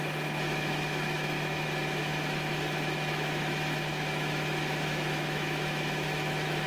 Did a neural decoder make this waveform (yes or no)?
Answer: yes